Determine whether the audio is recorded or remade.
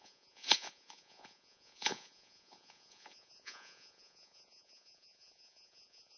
remade